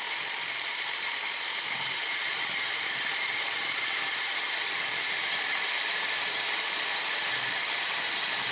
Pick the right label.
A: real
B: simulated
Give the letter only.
B